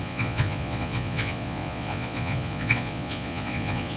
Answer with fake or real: fake